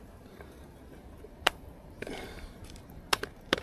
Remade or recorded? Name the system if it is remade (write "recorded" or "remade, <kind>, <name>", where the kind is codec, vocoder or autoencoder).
remade, vocoder, BigVGAN v2